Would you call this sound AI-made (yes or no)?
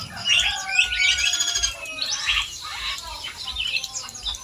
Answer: yes